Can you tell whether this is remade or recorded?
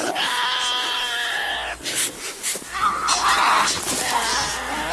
recorded